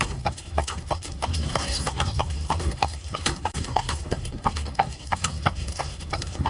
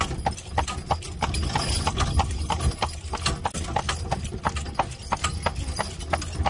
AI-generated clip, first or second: first